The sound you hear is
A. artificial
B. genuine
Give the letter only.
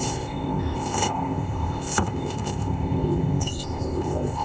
A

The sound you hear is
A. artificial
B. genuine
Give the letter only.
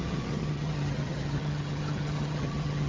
A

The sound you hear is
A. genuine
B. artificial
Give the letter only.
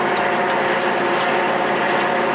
A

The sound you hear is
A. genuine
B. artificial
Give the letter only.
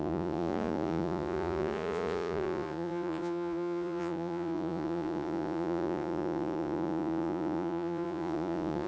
B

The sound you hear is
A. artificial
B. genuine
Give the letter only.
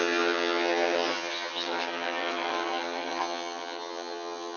A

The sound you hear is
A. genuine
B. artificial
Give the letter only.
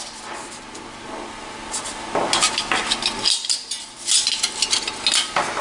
A